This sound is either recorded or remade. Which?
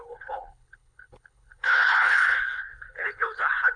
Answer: remade